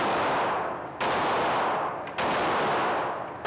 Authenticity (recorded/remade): recorded